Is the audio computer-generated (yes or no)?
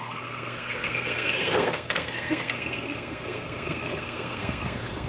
yes